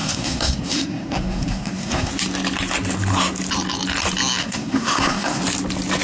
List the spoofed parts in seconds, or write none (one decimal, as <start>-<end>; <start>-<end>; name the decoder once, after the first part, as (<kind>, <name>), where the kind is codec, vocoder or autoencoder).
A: 0.0-2.1 (codec, SNAC); 4.4-5.4